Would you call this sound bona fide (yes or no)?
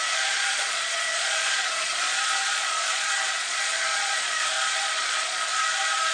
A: no